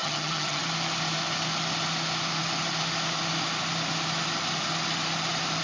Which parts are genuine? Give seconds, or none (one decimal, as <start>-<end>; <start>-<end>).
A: 0.6-5.6